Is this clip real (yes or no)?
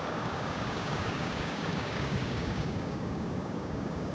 no